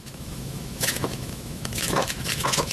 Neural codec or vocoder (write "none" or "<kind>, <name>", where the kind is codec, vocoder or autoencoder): autoencoder, DAC-VAE